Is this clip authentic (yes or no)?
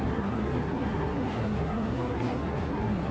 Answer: no